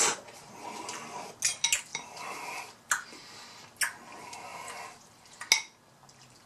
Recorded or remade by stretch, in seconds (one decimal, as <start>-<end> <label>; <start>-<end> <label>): 0.0-1.9 recorded; 1.9-2.6 remade; 2.6-4.5 recorded; 4.5-5.4 remade; 5.4-6.5 recorded